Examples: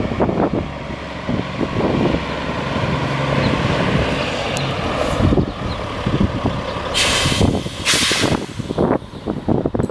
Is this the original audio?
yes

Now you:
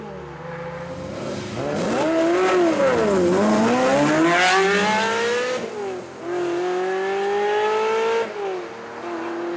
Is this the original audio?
yes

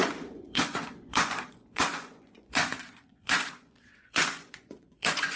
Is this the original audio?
no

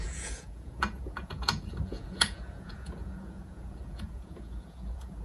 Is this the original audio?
no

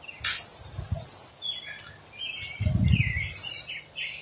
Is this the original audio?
yes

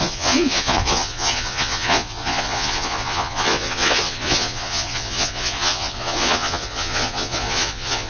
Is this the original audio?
no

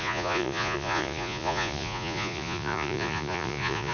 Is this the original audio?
no